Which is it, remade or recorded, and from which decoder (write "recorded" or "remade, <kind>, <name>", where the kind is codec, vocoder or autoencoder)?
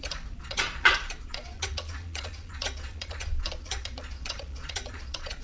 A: remade, vocoder, Vocos